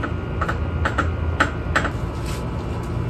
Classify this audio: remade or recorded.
recorded